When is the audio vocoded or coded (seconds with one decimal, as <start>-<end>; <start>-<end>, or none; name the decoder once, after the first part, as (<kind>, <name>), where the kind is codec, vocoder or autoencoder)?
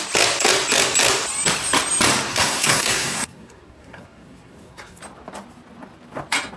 2.3-5.0 (codec, SNAC)